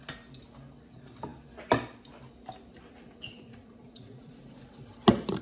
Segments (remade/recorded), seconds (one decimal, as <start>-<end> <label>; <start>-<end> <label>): 0.0-3.3 recorded; 3.3-4.8 remade; 4.8-5.4 recorded